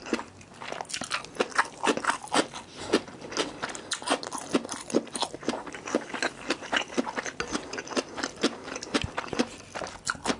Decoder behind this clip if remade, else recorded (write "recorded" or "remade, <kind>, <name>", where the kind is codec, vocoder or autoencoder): recorded